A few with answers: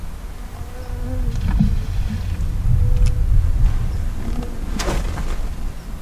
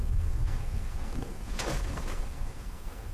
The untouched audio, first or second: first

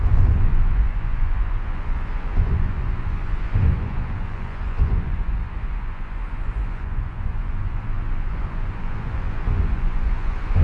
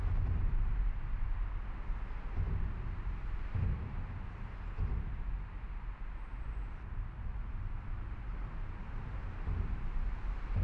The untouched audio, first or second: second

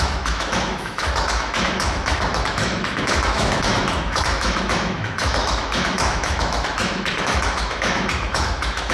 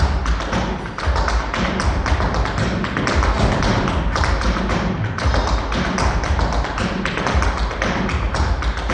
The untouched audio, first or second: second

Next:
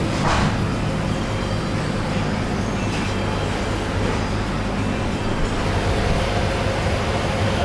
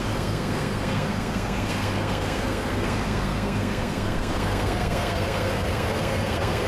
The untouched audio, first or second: first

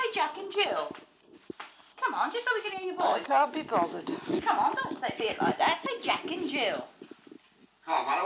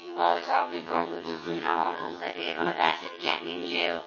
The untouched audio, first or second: first